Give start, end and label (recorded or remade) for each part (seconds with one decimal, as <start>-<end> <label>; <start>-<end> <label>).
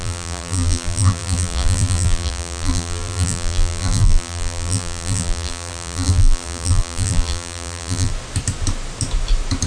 0.0-8.1 remade; 8.1-9.7 recorded